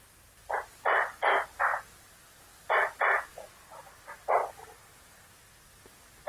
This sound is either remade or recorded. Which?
recorded